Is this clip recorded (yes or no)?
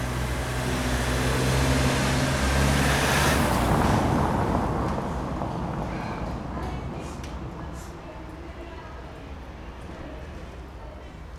yes